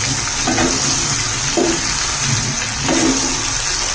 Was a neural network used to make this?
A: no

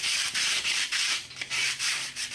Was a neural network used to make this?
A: yes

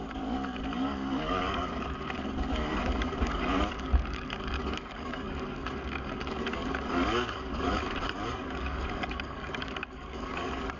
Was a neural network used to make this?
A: yes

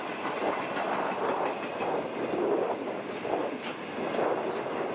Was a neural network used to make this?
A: no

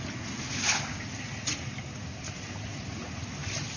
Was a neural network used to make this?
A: no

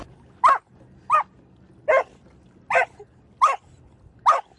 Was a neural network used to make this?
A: no